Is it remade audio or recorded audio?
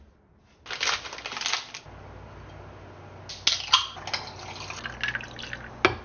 recorded